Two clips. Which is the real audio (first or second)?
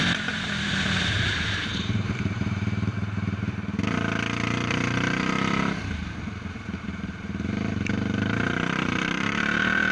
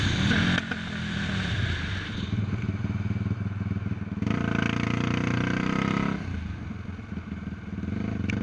second